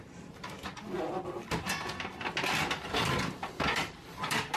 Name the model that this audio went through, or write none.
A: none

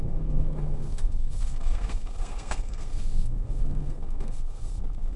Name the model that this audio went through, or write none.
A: codec, SNAC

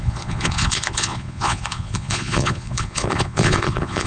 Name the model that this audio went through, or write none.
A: vocoder, Vocos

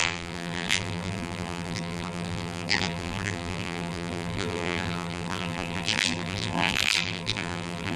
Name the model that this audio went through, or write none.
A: vocoder, BigVGAN v2